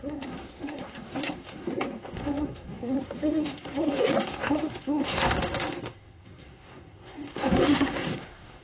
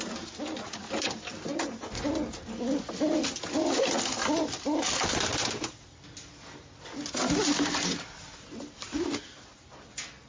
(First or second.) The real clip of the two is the second